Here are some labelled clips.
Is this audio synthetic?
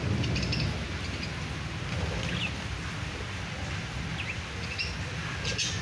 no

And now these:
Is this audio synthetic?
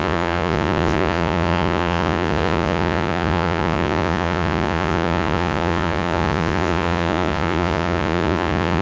yes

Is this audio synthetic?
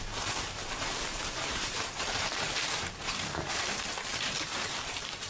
yes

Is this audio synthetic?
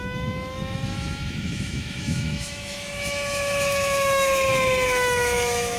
yes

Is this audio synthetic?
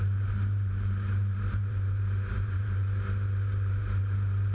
yes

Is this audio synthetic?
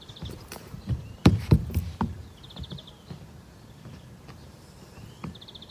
yes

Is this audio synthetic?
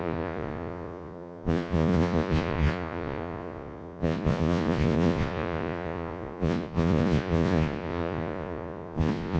yes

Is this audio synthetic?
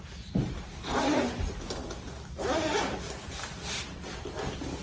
no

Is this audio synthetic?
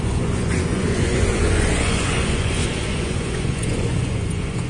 yes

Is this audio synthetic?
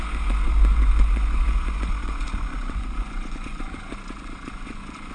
yes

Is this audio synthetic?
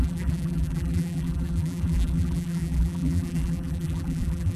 yes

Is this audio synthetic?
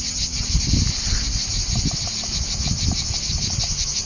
no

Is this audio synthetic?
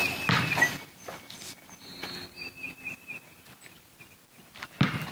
no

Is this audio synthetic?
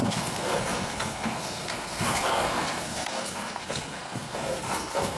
yes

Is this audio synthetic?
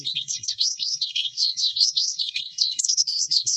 yes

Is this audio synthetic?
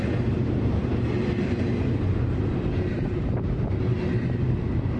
no